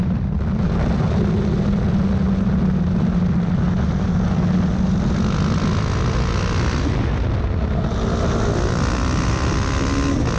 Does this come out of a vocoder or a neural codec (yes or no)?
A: no